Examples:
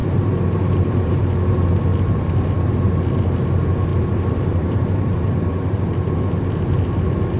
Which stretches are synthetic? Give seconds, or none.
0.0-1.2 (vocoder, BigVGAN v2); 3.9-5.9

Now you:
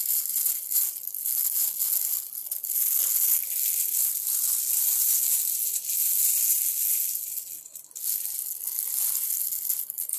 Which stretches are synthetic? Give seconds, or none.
none

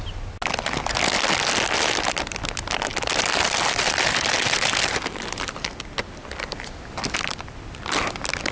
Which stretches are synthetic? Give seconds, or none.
2.9-5.8 (vocoder, BigVGAN v2); 6.2-8.0